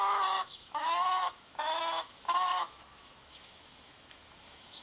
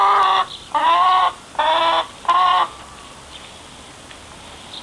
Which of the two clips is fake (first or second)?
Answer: first